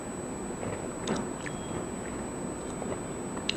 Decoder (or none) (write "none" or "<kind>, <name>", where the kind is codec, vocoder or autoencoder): none